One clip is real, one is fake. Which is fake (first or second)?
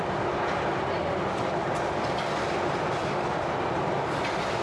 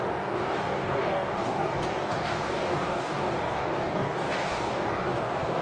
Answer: second